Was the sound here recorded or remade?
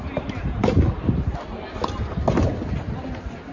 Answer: recorded